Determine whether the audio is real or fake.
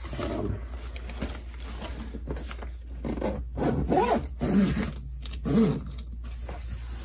real